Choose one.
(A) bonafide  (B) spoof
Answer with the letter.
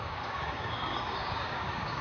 B